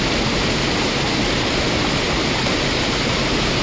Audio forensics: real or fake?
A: real